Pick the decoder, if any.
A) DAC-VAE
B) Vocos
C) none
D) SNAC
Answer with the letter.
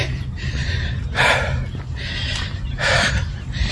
C